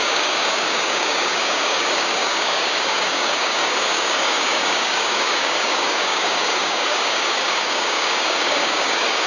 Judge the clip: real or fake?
fake